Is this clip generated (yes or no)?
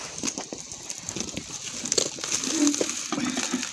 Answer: no